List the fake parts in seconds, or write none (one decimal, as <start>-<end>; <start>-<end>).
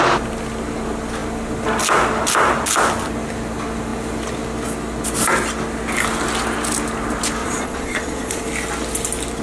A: 7.4-8.5